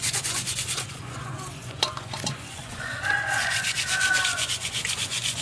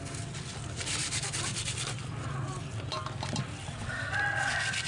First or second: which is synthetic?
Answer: first